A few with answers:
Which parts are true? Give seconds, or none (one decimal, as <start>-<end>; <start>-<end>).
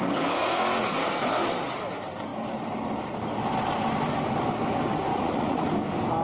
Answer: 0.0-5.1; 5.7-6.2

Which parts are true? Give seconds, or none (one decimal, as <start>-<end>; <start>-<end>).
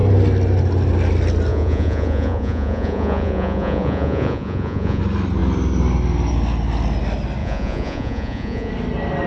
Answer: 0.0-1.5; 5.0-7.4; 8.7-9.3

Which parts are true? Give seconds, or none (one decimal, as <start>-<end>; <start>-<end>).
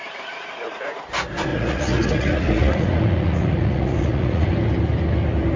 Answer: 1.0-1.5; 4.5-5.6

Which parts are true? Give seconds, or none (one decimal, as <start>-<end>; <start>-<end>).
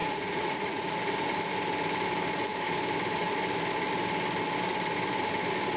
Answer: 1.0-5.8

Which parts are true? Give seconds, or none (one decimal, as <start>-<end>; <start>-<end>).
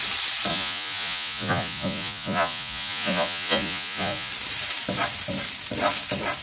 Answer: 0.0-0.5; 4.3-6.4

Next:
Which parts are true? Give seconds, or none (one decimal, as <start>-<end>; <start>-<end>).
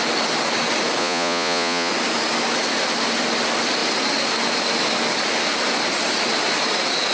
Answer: 0.0-1.0; 1.9-7.1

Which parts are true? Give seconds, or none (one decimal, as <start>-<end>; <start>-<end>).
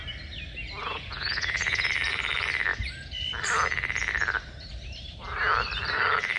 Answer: 0.0-0.8; 1.9-6.4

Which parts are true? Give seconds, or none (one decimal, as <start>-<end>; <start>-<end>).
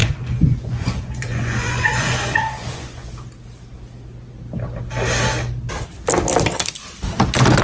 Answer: 3.1-7.6